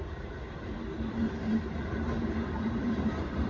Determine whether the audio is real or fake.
fake